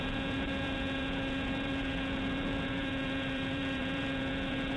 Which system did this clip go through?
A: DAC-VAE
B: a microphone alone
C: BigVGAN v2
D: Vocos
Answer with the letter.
D